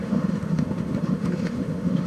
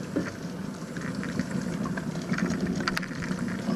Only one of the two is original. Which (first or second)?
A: second